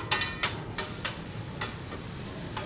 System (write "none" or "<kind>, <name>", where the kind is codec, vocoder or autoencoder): none